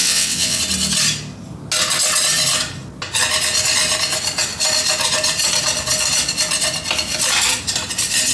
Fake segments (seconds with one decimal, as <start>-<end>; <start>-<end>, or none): 0.0-0.6